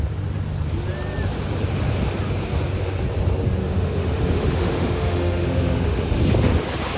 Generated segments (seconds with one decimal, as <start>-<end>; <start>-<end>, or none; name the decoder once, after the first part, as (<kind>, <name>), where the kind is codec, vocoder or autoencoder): 3.6-6.2 (autoencoder, DAC-VAE)